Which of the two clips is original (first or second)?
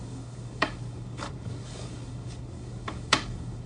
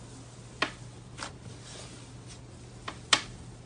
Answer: second